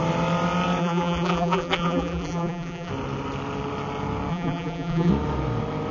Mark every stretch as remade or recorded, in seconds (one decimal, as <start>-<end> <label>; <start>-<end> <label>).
0.0-0.8 recorded; 0.8-2.9 remade; 2.9-4.3 recorded; 4.3-5.1 remade; 5.1-5.9 recorded